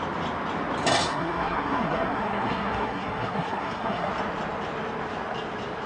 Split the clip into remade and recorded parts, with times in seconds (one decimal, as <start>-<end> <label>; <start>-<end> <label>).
0.0-1.1 recorded; 1.1-4.1 remade; 4.1-5.9 recorded